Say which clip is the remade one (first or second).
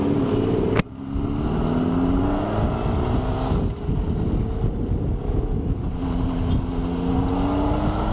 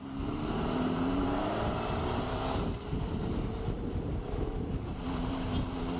second